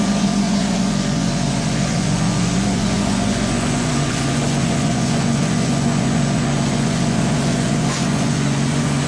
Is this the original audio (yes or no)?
no